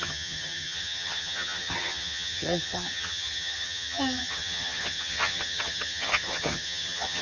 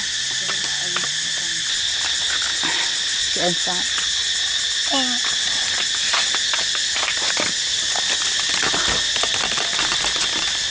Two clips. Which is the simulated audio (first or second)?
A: first